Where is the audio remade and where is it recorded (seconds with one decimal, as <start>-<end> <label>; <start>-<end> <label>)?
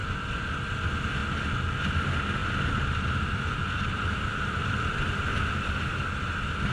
0.0-6.7 recorded